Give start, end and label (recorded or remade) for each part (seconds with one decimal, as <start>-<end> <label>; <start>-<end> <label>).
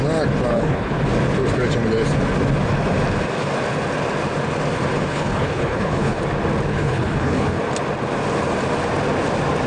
0.0-0.5 recorded; 0.5-1.0 remade; 1.0-5.1 recorded; 5.1-6.2 remade; 6.2-6.7 recorded; 6.7-7.6 remade; 7.6-9.7 recorded